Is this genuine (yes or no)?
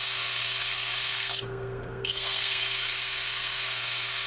no